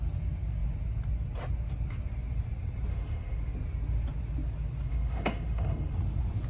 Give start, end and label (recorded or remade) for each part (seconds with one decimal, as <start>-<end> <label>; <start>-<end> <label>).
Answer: 0.0-2.9 recorded; 2.9-3.4 remade; 3.4-4.9 recorded; 4.9-6.0 remade; 6.0-6.5 recorded